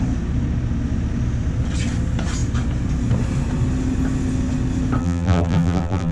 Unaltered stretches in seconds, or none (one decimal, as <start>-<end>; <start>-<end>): 0.0-5.0